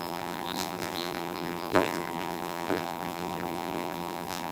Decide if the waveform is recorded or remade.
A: remade